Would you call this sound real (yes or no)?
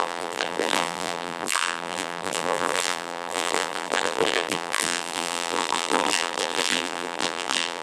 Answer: no